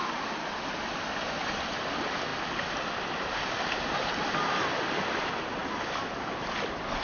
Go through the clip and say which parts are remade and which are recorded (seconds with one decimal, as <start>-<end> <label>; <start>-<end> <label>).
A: 0.0-7.0 recorded